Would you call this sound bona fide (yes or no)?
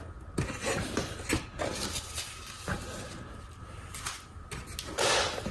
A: yes